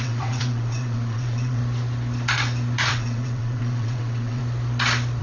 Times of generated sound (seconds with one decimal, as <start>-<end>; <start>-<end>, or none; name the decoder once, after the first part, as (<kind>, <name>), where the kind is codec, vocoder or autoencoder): 0.0-1.6 (vocoder, WaveNeXt); 2.9-4.4